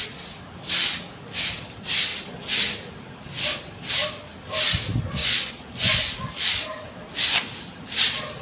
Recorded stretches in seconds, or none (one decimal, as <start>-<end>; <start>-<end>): 0.0-5.2; 6.3-8.4